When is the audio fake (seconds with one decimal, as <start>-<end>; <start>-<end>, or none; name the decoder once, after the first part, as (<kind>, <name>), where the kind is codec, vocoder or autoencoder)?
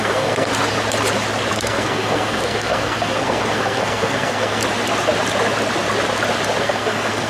0.0-0.5 (codec, SNAC); 1.5-4.6; 6.6-7.3